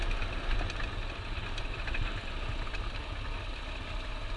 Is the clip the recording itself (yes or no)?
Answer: yes